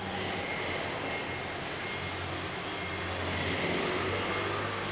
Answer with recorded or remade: recorded